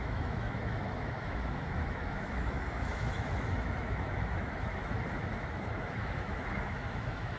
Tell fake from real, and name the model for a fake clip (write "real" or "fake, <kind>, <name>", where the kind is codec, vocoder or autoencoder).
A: fake, autoencoder, DAC-VAE